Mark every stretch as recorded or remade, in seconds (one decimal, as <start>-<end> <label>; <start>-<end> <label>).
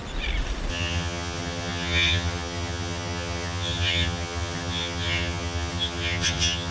0.0-0.7 recorded; 0.7-6.7 remade